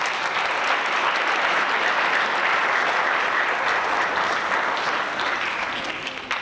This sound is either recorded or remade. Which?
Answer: recorded